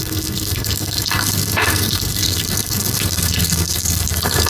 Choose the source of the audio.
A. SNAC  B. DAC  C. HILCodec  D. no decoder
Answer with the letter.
A